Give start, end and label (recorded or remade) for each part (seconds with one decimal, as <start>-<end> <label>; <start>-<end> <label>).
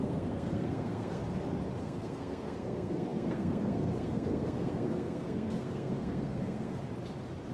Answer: 0.0-1.2 remade; 1.2-1.8 recorded; 1.8-6.8 remade; 6.8-7.5 recorded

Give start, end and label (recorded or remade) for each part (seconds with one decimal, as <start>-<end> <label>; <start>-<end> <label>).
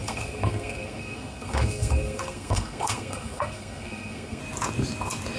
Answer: 0.0-4.4 remade; 4.4-5.4 recorded